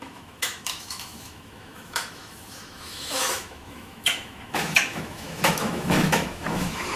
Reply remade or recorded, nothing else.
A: remade